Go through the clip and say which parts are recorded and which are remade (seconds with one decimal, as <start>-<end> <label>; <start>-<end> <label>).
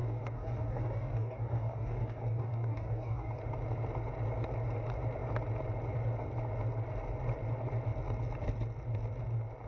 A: 0.0-3.4 remade; 3.4-9.7 recorded